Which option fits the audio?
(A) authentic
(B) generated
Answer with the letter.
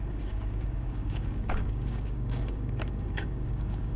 B